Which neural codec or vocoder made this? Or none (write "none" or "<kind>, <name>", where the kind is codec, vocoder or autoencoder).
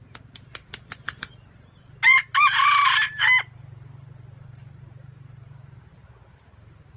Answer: vocoder, BigVGAN v2